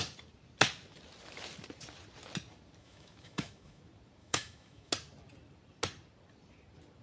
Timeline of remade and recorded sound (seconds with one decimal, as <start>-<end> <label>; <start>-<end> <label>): 0.0-2.8 recorded; 2.8-3.8 remade; 3.8-4.2 recorded; 4.2-4.9 remade; 4.9-7.0 recorded